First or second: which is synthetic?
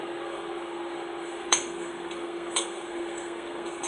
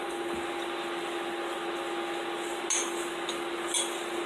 first